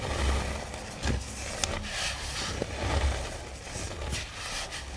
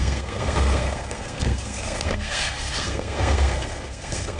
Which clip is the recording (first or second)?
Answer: first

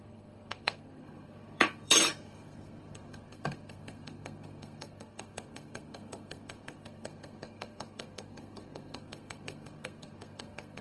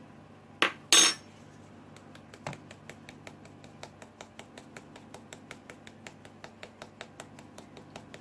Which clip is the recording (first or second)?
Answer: second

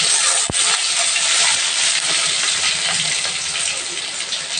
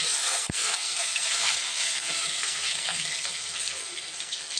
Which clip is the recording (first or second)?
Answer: first